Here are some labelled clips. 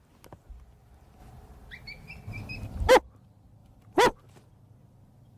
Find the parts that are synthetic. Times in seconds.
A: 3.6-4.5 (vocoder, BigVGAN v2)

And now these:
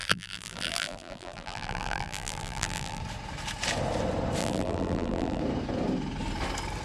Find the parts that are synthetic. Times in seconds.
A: 0.0-3.0 (vocoder, BigVGAN v2); 4.4-5.4